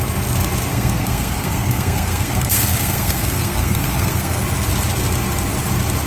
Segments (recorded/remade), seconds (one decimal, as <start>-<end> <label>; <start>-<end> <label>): 0.0-0.7 recorded; 0.7-4.4 remade; 4.4-6.1 recorded